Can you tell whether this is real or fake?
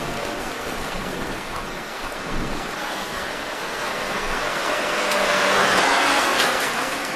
fake